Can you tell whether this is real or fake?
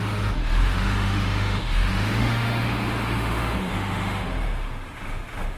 fake